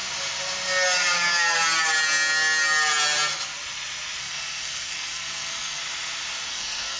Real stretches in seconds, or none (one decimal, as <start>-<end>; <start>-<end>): 0.0-4.2; 5.8-6.5